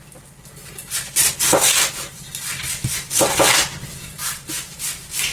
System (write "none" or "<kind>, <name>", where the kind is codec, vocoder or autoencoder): none